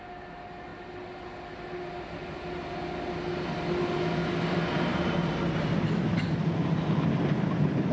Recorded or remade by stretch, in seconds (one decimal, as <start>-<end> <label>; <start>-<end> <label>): 0.0-7.9 recorded